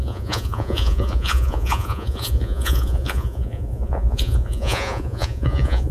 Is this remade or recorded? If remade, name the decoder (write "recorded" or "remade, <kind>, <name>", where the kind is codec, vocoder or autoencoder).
remade, vocoder, Vocos